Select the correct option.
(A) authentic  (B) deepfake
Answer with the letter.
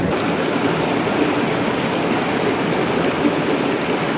A